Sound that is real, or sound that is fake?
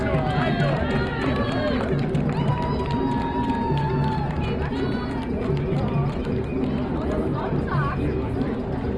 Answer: real